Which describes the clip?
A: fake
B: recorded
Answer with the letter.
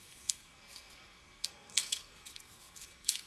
A